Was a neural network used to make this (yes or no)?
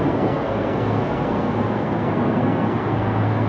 yes